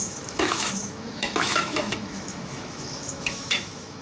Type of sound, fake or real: fake